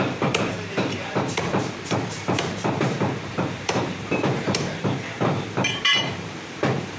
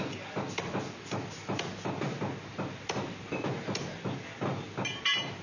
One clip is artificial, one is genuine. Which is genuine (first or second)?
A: second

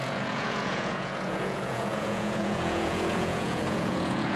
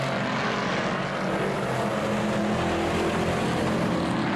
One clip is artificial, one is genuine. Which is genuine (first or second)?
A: second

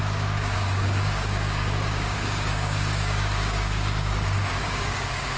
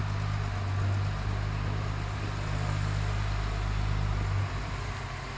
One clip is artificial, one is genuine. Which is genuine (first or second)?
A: second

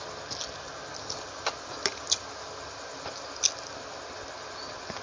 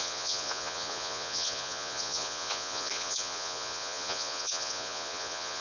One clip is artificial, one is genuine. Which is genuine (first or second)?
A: first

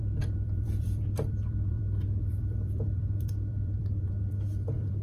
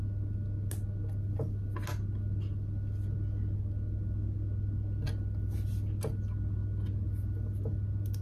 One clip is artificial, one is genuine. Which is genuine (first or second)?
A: second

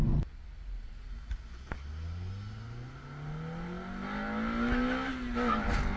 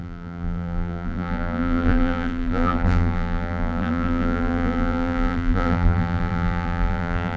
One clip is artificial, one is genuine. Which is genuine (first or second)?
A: first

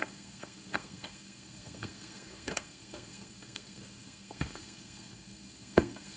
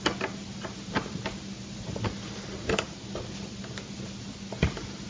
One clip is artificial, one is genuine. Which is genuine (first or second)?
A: second